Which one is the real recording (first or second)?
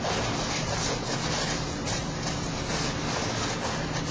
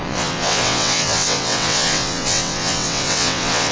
first